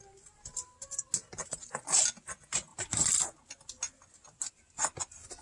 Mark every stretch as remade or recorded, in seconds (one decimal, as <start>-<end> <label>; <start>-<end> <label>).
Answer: 0.0-1.4 recorded; 1.4-2.0 remade; 2.0-5.4 recorded

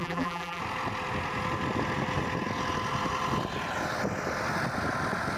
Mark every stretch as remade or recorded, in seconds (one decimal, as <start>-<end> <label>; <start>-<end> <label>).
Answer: 0.0-0.6 remade; 0.6-5.4 recorded

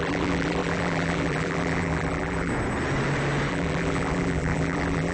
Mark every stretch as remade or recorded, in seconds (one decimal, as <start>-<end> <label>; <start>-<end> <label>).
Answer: 0.0-2.5 remade; 2.5-3.5 recorded; 3.5-5.1 remade

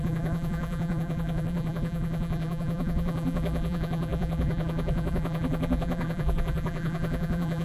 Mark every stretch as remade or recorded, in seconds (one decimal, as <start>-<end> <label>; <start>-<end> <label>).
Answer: 0.0-7.6 remade

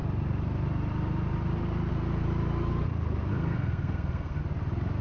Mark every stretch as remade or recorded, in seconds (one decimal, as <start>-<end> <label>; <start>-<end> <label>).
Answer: 0.0-3.3 recorded; 3.3-4.4 remade; 4.4-5.0 recorded